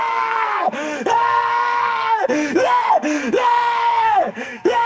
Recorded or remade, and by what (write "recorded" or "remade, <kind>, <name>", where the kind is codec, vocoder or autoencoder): remade, codec, SNAC